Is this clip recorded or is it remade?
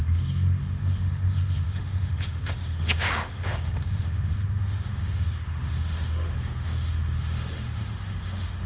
remade